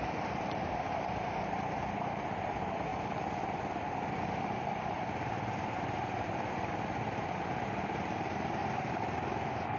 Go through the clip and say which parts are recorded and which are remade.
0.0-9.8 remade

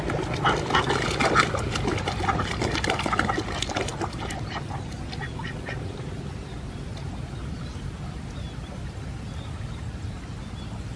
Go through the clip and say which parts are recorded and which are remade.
0.0-11.0 recorded

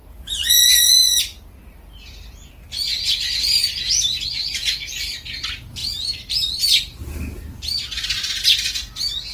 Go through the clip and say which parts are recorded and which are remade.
0.0-2.9 recorded; 2.9-3.9 remade; 3.9-5.8 recorded; 5.8-6.6 remade; 6.6-9.3 recorded

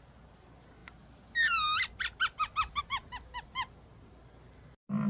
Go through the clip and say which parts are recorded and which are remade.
0.0-5.1 recorded

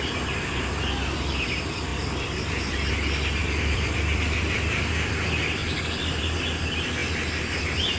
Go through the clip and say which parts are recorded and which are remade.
0.0-1.9 recorded; 1.9-2.9 remade; 2.9-3.4 recorded; 3.4-4.8 remade; 4.8-8.0 recorded

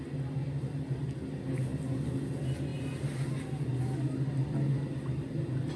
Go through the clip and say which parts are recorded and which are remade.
0.0-5.8 recorded

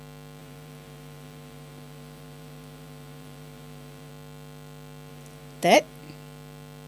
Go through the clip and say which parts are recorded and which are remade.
0.0-0.4 recorded; 0.4-4.1 remade; 4.1-5.1 recorded; 5.1-6.0 remade; 6.0-6.9 recorded